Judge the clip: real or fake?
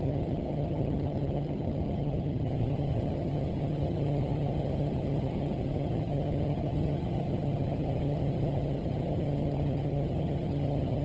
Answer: fake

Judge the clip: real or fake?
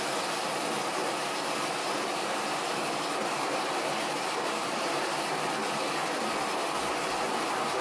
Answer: real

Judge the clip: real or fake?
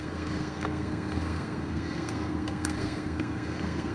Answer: fake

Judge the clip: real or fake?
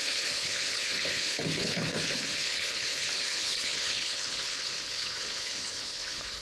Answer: fake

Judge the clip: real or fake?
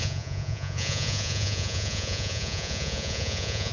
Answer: fake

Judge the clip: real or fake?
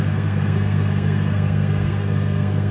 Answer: fake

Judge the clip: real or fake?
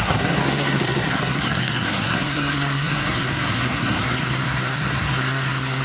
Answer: fake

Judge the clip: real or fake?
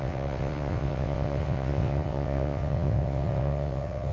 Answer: fake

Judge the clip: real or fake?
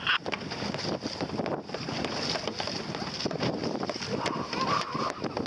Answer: real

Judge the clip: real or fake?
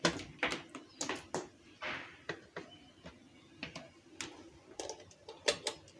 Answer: real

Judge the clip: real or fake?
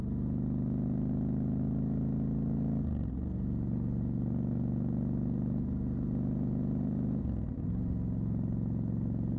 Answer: real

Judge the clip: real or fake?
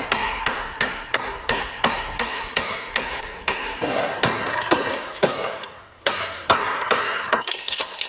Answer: fake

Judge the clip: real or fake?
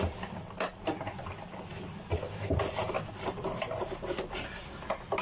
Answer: real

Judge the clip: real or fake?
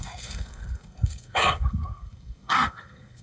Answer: fake